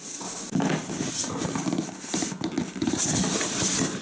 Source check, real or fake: real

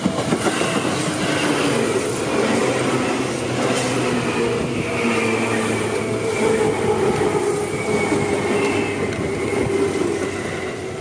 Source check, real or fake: real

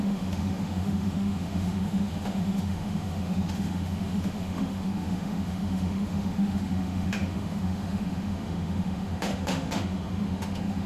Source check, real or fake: fake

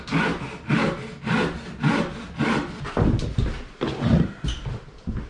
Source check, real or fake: real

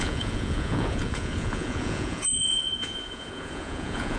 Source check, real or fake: fake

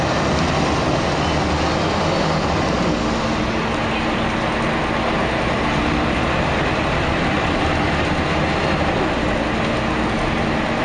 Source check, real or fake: real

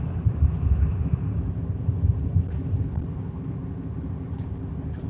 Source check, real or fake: real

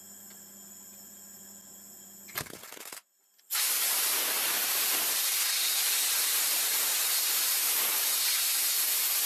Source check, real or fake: real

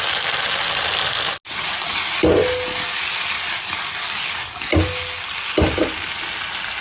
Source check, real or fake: real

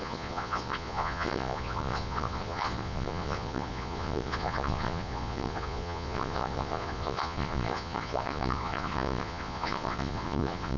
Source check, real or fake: fake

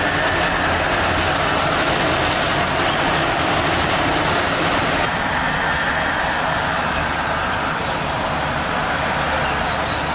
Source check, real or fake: real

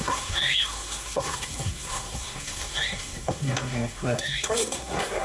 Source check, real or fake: fake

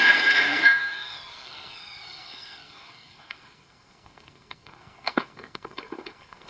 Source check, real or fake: fake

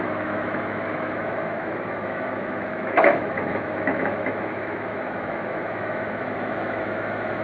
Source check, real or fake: fake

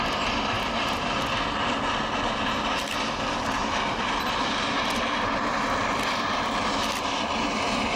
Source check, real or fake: real